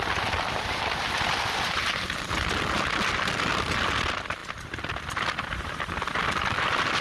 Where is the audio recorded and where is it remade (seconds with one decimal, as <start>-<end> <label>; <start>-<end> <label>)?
0.0-7.0 remade